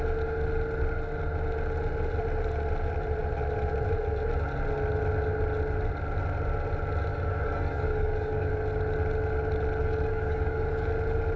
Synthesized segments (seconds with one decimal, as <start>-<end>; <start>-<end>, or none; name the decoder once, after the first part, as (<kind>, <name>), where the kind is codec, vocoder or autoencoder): 7.1-8.5 (codec, DAC); 9.8-10.9

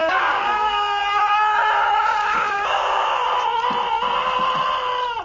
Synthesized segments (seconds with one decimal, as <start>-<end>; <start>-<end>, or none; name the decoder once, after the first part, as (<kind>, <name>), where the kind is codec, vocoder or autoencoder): 0.0-1.0 (codec, DAC); 2.2-3.2

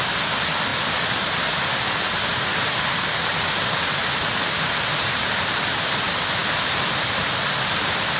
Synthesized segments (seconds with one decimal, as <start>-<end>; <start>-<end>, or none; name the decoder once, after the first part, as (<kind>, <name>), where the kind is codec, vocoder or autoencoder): none

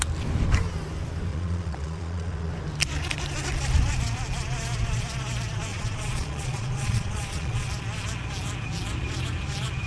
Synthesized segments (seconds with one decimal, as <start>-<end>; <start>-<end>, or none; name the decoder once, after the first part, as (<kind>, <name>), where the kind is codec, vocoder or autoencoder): 1.3-2.5 (vocoder, Vocos); 5.7-7.7

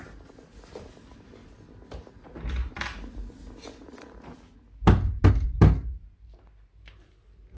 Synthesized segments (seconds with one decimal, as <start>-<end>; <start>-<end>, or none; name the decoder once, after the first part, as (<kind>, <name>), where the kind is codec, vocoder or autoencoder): none

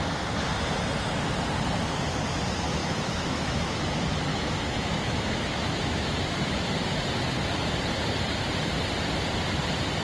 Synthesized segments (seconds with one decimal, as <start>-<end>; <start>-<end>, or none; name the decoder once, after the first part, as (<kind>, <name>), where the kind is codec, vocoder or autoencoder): 2.8-3.8 (autoencoder, DAC-VAE); 4.3-6.6

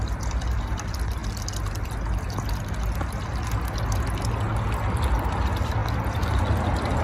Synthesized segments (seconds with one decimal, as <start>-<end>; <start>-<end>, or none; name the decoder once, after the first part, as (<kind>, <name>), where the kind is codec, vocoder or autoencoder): none

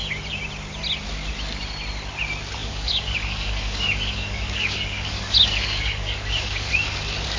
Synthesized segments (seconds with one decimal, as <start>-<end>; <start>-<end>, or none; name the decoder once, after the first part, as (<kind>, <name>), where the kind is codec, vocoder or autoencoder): 2.6-7.0 (codec, DAC)